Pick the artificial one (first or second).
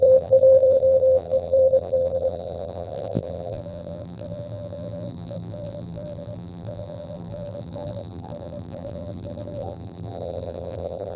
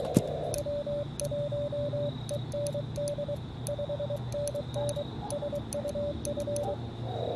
first